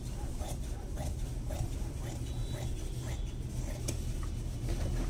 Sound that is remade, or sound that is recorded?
recorded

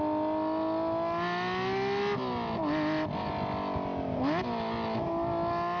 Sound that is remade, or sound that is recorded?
recorded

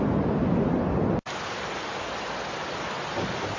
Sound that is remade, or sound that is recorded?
recorded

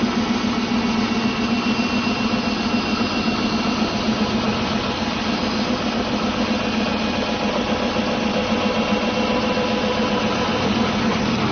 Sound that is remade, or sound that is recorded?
recorded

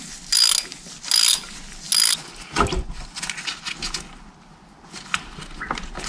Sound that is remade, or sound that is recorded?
recorded